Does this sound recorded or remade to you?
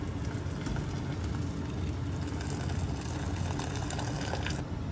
recorded